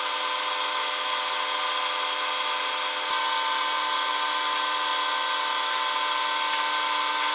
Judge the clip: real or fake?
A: real